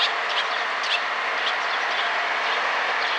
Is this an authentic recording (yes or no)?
yes